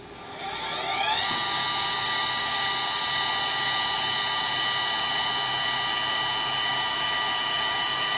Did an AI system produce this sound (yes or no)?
no